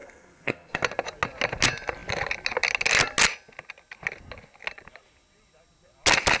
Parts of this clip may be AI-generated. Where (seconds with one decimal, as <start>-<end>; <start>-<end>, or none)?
0.0-0.8